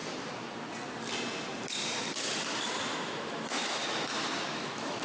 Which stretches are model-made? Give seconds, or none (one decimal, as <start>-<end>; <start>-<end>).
3.0-3.8; 4.5-5.0